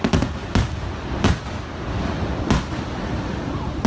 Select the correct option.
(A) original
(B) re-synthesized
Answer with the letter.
A